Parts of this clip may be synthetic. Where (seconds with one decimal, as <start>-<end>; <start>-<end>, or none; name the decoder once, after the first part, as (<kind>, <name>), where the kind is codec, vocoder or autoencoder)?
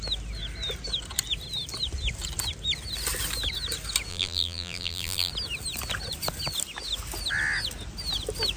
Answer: 4.1-5.3 (vocoder, BigVGAN v2)